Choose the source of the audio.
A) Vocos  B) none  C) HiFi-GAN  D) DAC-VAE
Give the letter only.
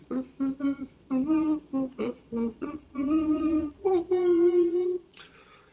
A